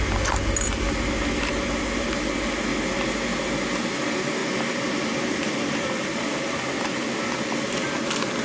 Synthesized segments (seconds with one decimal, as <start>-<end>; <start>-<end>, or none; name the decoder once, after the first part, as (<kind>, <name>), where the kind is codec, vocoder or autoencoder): none